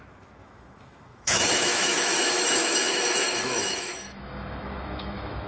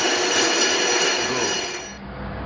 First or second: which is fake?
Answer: first